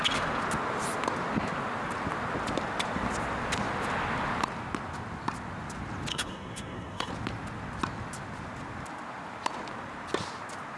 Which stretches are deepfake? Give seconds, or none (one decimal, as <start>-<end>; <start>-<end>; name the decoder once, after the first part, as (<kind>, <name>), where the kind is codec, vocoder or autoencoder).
6.1-7.1 (codec, SNAC)